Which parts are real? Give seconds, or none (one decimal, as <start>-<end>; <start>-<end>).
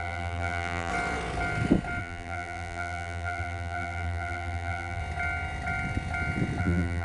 0.9-2.0; 5.0-6.6